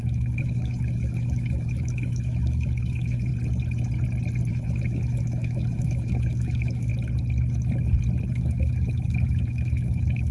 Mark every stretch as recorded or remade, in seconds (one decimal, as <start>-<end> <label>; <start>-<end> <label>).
0.0-3.3 remade; 3.3-4.5 recorded; 4.5-6.9 remade; 6.9-8.3 recorded; 8.3-10.3 remade